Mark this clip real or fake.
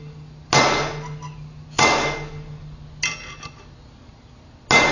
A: real